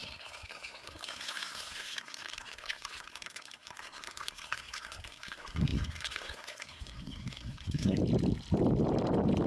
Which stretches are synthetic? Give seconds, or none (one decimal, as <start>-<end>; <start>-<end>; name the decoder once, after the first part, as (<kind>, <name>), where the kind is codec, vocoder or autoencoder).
0.0-8.0 (codec, SNAC)